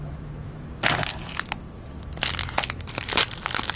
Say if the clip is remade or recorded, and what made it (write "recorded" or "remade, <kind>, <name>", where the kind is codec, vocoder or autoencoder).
recorded